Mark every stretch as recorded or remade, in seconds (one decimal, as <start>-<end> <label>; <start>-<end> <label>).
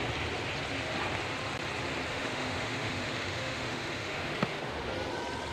0.0-2.1 recorded; 2.1-4.9 remade; 4.9-5.5 recorded